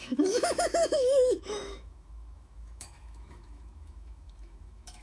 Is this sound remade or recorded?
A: remade